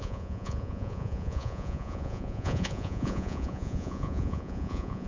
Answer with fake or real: fake